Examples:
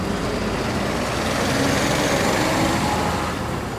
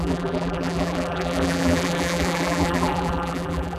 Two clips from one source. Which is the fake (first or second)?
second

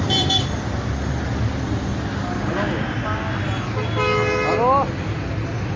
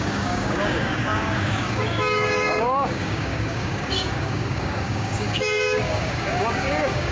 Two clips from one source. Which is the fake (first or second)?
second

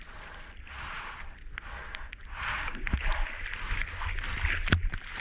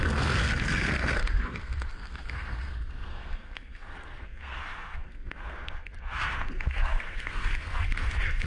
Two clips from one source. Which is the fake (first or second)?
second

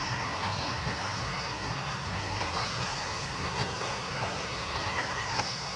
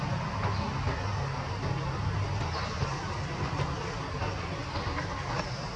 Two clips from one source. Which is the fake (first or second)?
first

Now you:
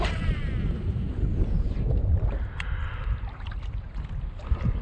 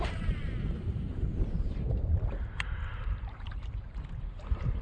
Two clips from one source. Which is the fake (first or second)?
second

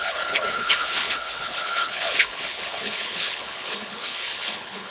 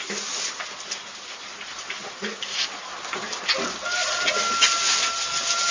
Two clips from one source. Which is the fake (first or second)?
first